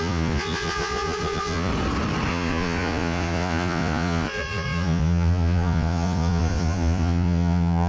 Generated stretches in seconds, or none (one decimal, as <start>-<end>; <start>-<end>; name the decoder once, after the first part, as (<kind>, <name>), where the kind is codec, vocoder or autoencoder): 0.0-1.7 (vocoder, Vocos); 2.3-7.9

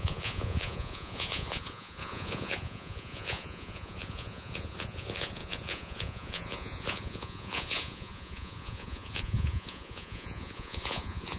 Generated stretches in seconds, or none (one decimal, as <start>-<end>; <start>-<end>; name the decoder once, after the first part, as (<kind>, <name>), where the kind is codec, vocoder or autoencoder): 0.0-11.4 (vocoder, Vocos)

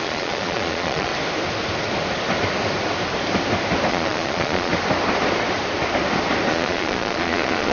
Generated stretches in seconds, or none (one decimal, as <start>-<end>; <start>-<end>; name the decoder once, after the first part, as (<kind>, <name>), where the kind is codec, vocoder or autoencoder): 0.0-1.1 (vocoder, Vocos); 3.9-4.7; 6.5-7.7